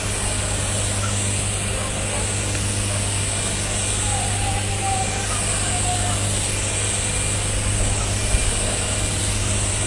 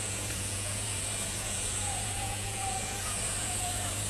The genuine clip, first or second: first